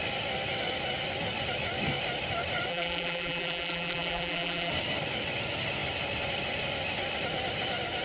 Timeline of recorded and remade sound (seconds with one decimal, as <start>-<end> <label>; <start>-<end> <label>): 0.0-2.7 recorded; 2.7-4.7 remade; 4.7-8.0 recorded